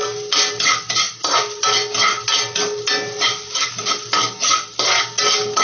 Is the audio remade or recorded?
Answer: recorded